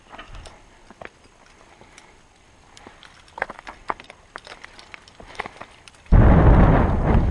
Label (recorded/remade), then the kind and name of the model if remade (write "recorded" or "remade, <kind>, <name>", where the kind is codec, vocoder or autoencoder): recorded